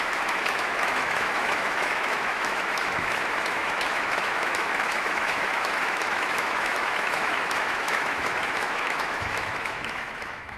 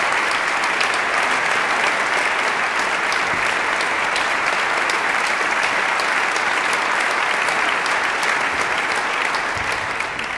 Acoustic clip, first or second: second